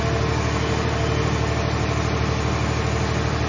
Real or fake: real